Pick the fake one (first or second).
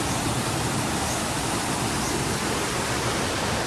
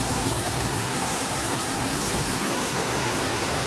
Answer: second